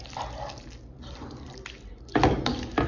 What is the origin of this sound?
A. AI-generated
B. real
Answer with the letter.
B